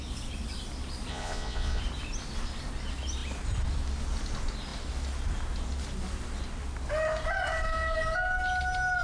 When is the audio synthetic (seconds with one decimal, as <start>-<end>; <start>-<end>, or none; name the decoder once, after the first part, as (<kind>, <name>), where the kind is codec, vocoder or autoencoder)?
1.1-1.8 (vocoder, Vocos)